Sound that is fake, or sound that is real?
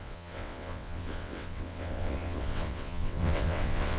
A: fake